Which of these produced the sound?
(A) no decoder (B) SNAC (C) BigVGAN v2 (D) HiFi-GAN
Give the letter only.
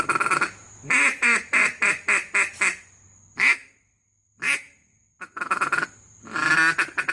A